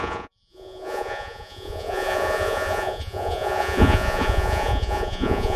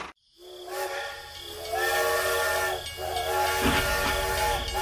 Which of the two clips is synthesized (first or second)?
first